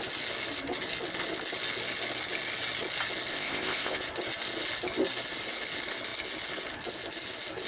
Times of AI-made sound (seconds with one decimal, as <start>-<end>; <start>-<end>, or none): 3.3-4.0

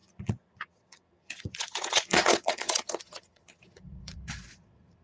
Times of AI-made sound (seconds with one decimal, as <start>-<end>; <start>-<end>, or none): 0.0-5.0

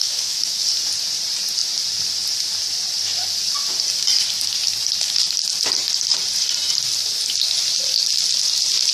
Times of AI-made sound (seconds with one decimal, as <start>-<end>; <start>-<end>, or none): 0.0-0.6

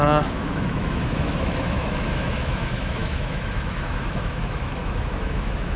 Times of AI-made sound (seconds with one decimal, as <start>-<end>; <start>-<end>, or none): 0.0-5.8

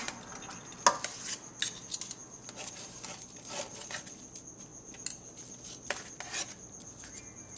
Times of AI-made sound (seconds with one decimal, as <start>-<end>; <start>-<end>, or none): none